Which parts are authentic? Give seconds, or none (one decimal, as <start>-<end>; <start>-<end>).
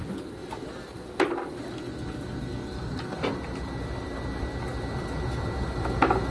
0.0-6.3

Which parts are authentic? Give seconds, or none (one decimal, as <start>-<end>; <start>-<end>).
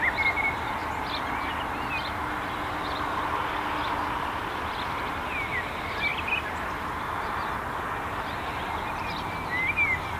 0.0-10.2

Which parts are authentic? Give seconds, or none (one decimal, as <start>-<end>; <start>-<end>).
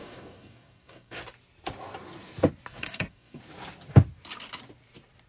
1.2-2.7; 3.4-5.3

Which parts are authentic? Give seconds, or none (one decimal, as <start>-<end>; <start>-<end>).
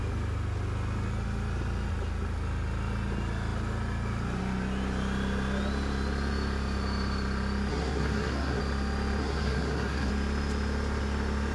0.0-7.7; 8.6-9.2; 10.1-11.5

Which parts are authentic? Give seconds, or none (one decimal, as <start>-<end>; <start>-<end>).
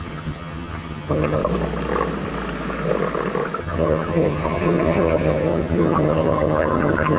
1.4-3.6